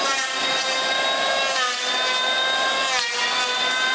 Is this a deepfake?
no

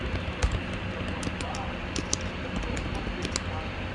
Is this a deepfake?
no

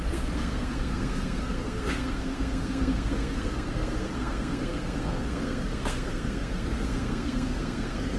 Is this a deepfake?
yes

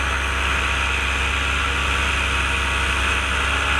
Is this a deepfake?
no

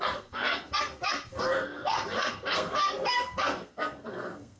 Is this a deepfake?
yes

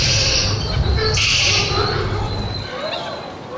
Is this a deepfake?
no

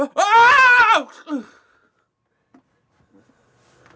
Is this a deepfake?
no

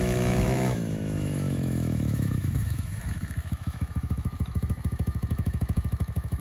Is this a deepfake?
yes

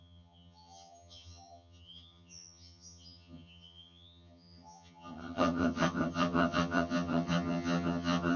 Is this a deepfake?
yes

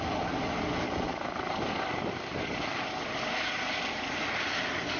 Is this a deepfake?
no